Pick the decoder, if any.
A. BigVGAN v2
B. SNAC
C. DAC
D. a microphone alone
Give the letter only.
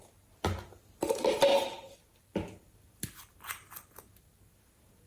D